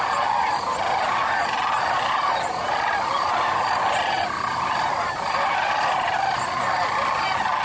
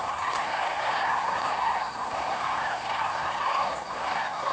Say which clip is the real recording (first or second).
first